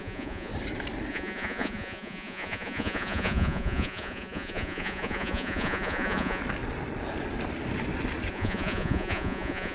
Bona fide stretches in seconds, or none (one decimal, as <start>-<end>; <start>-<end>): 0.5-1.1; 6.4-8.3